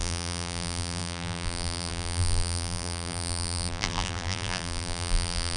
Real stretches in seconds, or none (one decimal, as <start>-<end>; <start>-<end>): none